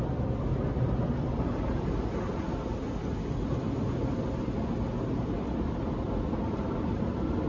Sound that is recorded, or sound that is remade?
recorded